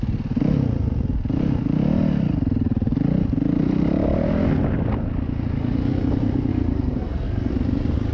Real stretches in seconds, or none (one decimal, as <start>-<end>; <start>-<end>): 0.0-6.5; 7.5-8.1